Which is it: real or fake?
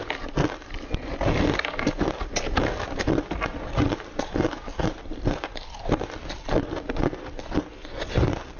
real